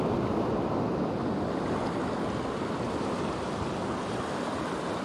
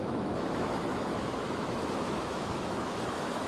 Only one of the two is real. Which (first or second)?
first